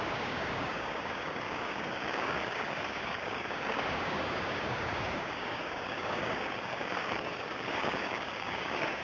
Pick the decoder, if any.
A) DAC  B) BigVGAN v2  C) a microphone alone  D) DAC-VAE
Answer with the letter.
A